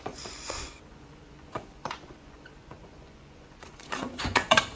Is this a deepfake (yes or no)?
yes